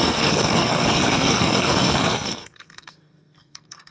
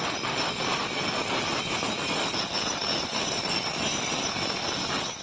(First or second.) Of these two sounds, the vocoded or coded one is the first